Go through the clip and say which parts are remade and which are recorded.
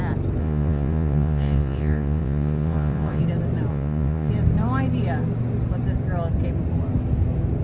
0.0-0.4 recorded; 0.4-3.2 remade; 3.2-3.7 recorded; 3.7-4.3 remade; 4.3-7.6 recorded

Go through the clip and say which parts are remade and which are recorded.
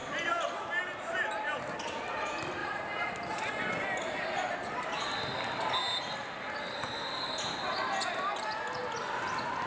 0.0-2.6 recorded; 2.6-3.5 remade; 3.5-9.7 recorded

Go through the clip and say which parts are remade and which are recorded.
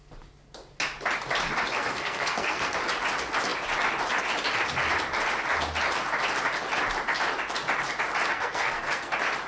0.0-1.6 recorded; 1.6-2.8 remade; 2.8-8.3 recorded; 8.3-9.1 remade; 9.1-9.5 recorded